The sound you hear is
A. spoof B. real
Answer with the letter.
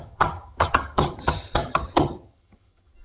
A